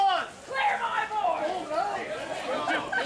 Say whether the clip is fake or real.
real